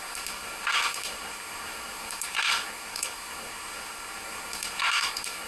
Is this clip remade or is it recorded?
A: remade